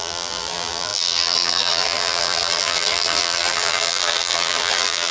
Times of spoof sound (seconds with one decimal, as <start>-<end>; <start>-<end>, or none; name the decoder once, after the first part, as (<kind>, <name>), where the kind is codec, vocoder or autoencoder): 0.0-5.1 (vocoder, BigVGAN v2)